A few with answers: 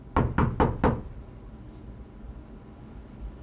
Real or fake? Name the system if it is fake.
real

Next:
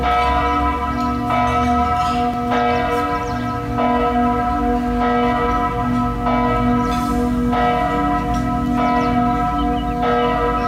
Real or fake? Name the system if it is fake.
real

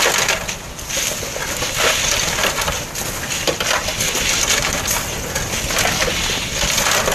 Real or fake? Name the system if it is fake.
real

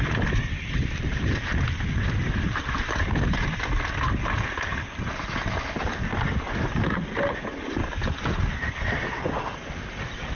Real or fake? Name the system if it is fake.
real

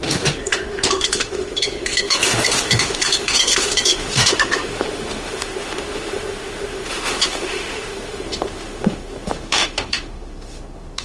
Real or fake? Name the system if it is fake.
fake, autoencoder, DAC-VAE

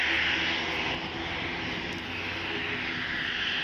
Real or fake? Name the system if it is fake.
real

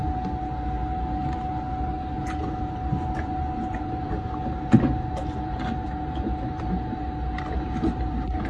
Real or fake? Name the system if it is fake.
real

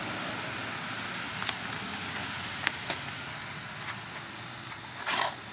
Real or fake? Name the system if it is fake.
real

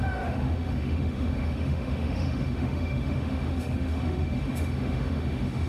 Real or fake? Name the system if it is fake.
fake, autoencoder, DAC-VAE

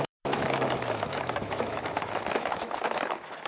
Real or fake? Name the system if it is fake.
fake, autoencoder, DAC-VAE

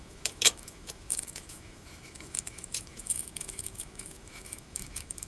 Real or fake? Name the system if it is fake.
fake, autoencoder, DAC-VAE